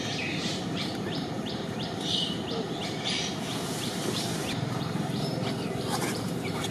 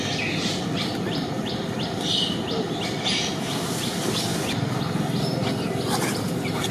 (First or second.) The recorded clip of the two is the second